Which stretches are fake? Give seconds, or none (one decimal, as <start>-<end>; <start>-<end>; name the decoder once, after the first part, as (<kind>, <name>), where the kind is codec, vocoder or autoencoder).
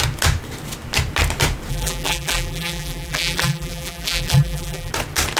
1.7-4.9 (vocoder, BigVGAN v2)